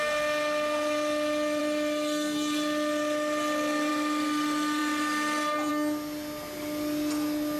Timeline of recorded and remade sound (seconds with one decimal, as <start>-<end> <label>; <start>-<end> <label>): 0.0-7.6 recorded